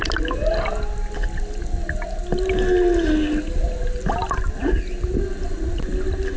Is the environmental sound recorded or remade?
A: recorded